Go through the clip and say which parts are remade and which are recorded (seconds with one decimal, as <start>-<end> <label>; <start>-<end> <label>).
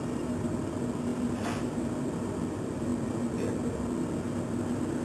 0.0-2.9 remade; 2.9-5.0 recorded